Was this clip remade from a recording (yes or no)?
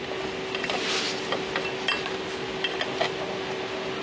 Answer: no